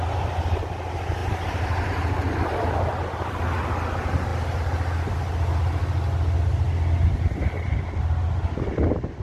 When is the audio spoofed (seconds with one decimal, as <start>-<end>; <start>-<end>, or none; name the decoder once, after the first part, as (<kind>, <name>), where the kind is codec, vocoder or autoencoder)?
1.2-2.9 (vocoder, BigVGAN v2)